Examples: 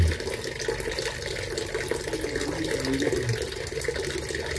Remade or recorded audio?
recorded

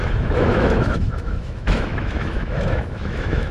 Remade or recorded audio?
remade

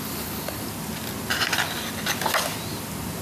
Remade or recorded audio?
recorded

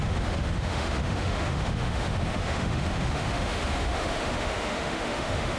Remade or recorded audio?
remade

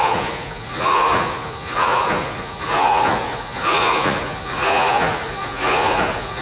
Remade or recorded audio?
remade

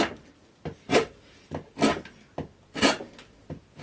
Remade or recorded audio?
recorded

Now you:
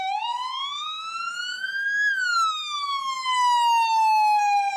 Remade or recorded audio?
remade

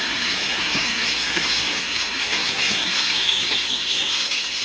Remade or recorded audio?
remade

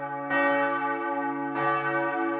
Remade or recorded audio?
recorded